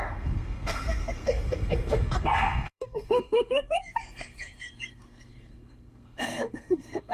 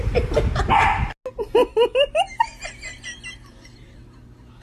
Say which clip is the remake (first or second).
first